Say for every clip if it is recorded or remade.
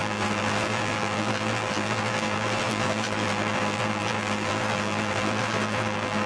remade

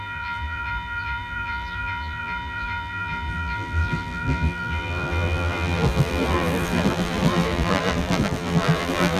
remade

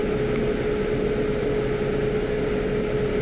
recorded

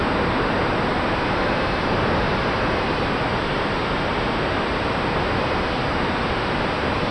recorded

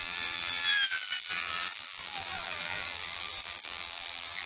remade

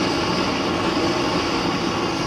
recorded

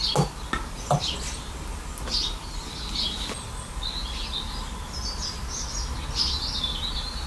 recorded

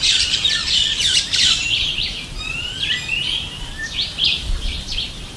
remade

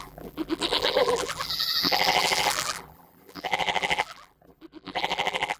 remade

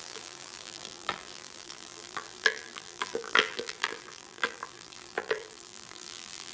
remade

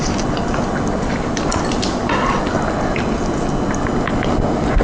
remade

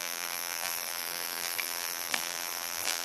remade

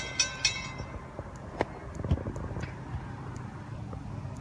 recorded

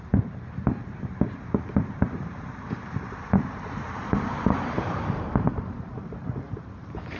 remade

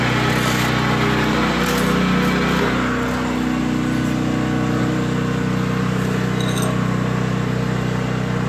recorded